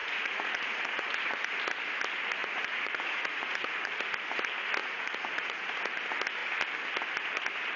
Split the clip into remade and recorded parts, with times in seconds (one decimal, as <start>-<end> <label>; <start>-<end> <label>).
0.0-1.6 remade; 1.6-2.4 recorded; 2.4-3.9 remade; 3.9-4.8 recorded; 4.8-5.8 remade; 5.8-7.8 recorded